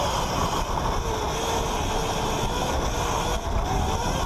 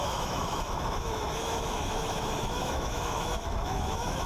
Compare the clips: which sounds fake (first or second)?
second